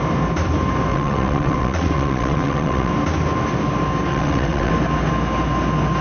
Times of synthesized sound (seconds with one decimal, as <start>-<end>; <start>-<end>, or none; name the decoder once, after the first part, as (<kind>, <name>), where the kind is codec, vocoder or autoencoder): 0.9-2.9 (vocoder, WaveNeXt); 4.1-4.7

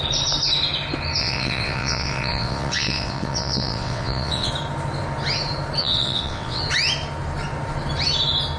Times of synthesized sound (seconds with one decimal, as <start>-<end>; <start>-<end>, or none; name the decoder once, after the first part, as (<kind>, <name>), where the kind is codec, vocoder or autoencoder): 1.2-4.5 (vocoder, WaveNeXt); 5.8-6.6

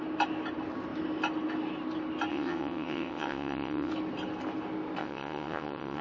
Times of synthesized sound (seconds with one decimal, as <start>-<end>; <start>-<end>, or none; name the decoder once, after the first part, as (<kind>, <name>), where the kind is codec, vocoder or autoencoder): 2.3-3.9 (vocoder, WaveNeXt); 5.0-6.0

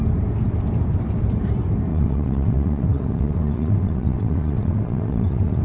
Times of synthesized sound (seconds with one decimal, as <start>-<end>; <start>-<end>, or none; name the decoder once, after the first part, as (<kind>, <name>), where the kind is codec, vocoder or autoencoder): 1.9-5.6 (vocoder, WaveNeXt)